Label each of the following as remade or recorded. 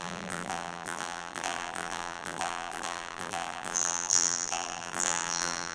remade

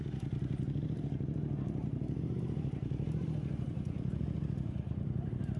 remade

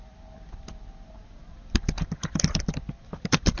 remade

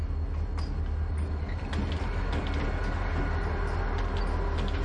recorded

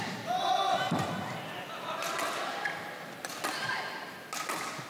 recorded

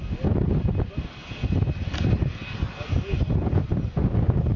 recorded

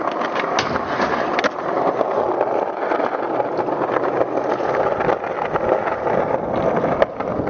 recorded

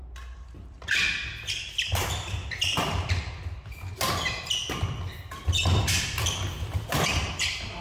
recorded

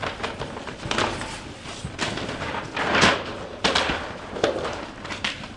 remade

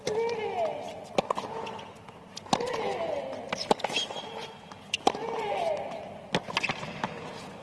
recorded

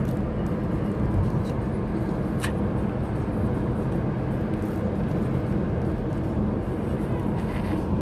recorded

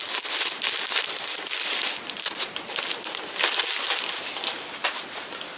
recorded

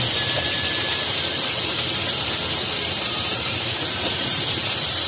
remade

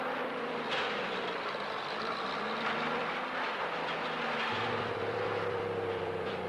remade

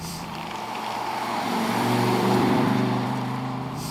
remade